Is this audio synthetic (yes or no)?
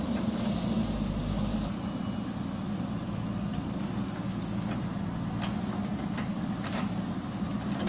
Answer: no